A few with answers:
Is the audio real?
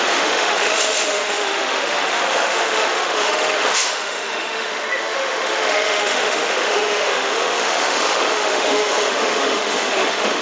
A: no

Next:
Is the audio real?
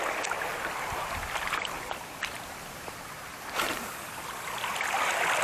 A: no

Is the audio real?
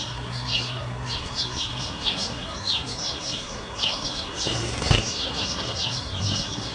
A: no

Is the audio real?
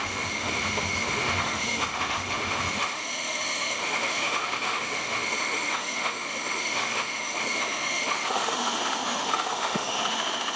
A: no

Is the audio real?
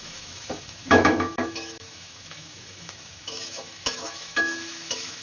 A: no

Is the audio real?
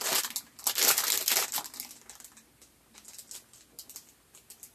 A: yes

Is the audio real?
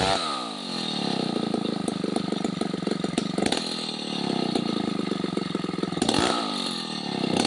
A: yes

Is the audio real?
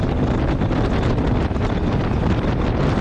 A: yes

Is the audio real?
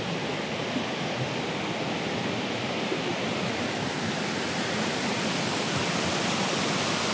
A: yes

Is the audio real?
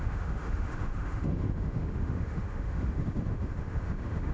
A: no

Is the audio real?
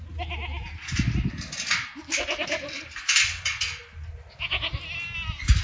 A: yes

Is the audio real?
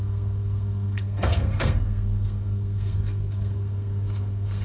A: no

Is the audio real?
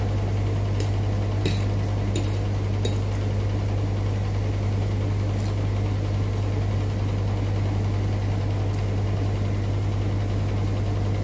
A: yes